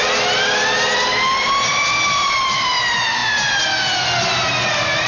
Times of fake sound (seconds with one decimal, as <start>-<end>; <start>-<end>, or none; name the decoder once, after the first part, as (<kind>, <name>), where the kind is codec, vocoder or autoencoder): none